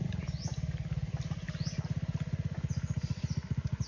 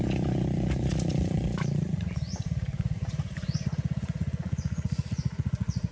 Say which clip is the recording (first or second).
first